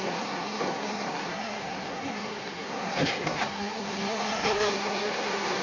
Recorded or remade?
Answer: remade